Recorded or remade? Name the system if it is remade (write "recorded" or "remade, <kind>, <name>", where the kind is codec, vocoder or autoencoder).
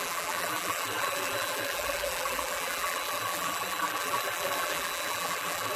remade, vocoder, BigVGAN v2